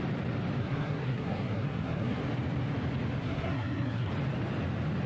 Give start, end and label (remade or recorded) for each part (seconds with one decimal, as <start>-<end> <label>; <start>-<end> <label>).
0.0-0.6 recorded; 0.6-2.2 remade; 2.2-3.2 recorded; 3.2-4.1 remade; 4.1-5.1 recorded